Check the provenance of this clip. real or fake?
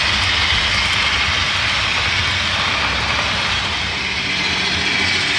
real